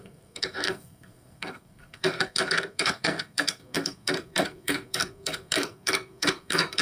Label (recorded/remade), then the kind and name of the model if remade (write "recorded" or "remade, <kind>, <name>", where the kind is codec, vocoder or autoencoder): remade, codec, SNAC